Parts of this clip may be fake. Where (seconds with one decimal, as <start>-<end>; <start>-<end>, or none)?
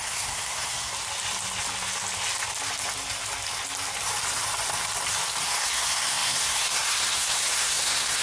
0.0-0.9; 5.4-8.2